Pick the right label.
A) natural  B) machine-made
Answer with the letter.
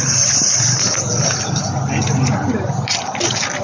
A